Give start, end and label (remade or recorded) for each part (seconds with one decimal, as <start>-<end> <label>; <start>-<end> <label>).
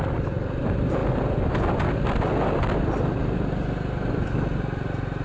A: 0.0-5.2 recorded